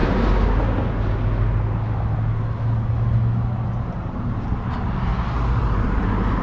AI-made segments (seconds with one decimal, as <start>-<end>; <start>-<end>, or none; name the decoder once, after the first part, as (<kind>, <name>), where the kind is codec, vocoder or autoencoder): 3.8-5.1 (vocoder, BigVGAN v2); 5.6-6.4